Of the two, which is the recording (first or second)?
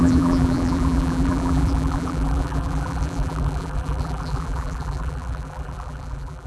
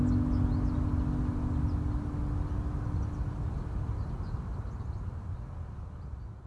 second